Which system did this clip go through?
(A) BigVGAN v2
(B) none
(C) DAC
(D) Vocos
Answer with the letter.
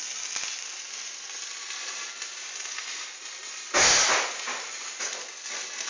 B